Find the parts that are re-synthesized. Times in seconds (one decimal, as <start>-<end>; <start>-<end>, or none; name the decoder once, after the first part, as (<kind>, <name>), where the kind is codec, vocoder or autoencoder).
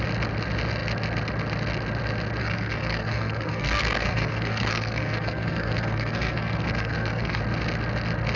2.4-7.4 (codec, SNAC)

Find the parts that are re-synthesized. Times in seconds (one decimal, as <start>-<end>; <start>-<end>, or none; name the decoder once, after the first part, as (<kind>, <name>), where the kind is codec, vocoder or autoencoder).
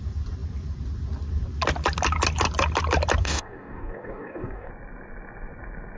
3.2-4.7 (codec, DAC)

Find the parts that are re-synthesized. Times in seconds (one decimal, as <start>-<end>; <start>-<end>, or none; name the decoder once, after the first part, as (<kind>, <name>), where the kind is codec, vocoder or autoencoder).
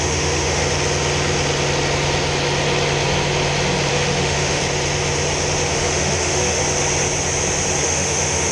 0.0-0.6 (autoencoder, DAC-VAE); 3.9-4.6; 5.7-6.6; 7.8-8.5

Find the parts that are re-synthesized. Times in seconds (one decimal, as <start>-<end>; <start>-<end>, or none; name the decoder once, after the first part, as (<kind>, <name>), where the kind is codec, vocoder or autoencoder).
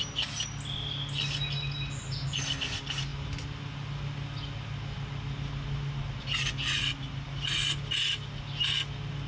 none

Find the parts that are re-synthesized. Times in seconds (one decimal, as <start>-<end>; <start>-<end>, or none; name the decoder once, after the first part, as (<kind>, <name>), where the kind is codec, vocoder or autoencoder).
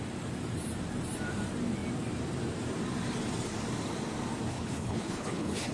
4.5-5.7 (codec, HILCodec)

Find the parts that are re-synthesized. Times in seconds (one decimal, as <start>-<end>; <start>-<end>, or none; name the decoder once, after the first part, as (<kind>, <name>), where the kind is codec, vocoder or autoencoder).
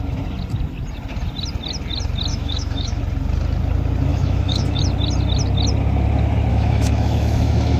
2.3-3.0 (autoencoder, DAC-VAE); 4.1-4.8; 6.5-7.8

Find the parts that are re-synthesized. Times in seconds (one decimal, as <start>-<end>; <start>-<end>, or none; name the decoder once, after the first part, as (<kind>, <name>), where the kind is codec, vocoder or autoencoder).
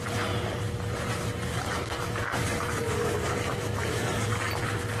1.5-4.5 (codec, DAC)